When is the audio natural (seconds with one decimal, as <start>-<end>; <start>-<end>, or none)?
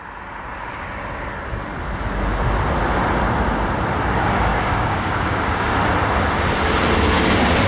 0.0-4.5; 5.7-7.7